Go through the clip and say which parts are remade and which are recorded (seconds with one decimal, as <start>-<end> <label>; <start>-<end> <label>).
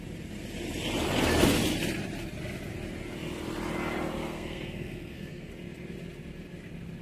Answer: 0.0-4.2 recorded; 4.2-5.5 remade; 5.5-7.0 recorded